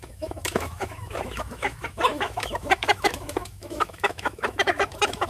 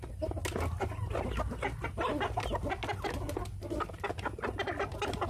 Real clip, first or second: second